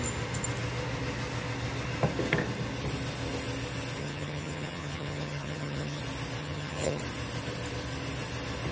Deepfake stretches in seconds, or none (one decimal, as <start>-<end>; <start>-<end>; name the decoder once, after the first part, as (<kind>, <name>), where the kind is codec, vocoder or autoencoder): 4.0-6.0 (vocoder, HiFi-GAN); 6.4-7.0